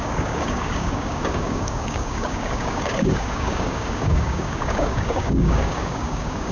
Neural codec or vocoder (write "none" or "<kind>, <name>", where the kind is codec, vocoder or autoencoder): codec, DAC